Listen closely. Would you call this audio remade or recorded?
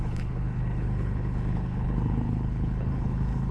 remade